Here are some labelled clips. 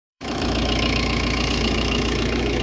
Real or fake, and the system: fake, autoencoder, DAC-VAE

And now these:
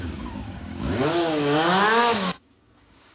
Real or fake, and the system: fake, codec, DAC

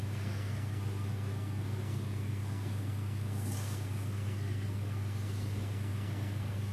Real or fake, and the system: fake, codec, SNAC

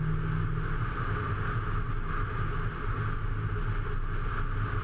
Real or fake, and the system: real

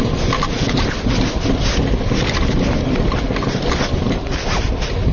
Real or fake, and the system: real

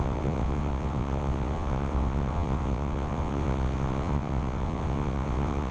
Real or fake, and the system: fake, vocoder, WaveNeXt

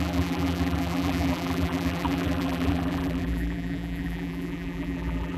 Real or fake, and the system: fake, vocoder, BigVGAN v2